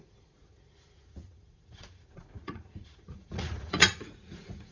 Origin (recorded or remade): remade